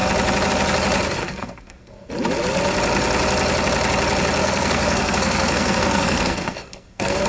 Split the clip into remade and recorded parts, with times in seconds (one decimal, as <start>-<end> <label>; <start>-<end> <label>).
0.0-1.2 recorded; 1.2-2.1 remade; 2.1-4.4 recorded; 4.4-7.3 remade

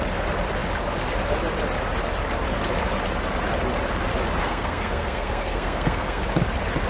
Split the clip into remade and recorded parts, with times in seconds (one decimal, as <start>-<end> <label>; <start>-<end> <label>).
0.0-4.4 recorded; 4.4-6.2 remade; 6.2-6.9 recorded

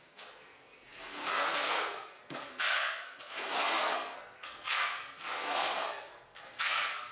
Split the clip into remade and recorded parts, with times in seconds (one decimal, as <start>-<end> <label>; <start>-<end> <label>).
0.0-7.1 remade

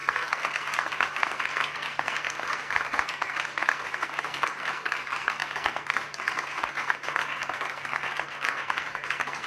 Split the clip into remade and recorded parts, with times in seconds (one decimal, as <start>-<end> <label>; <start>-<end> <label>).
0.0-9.5 remade

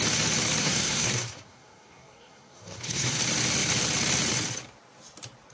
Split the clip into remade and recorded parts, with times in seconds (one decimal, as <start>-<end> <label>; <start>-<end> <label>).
0.0-0.6 recorded; 0.6-3.2 remade; 3.2-5.5 recorded

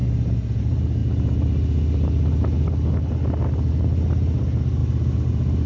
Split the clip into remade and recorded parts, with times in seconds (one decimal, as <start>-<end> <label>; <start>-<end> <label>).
0.0-5.7 recorded

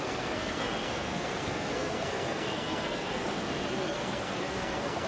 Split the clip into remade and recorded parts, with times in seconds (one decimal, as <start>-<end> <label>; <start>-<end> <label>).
0.0-5.1 remade

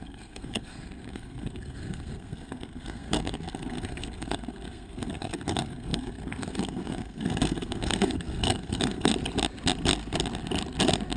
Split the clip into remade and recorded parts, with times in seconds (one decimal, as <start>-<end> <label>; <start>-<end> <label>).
0.0-9.1 remade; 9.1-11.2 recorded